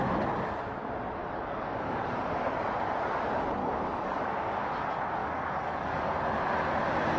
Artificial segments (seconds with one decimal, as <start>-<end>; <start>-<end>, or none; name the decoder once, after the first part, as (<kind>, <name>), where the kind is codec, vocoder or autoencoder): 1.2-2.0 (codec, DAC); 3.6-4.7; 5.2-6.0